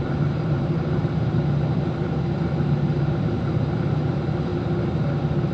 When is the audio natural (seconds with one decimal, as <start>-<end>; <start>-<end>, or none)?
4.5-5.5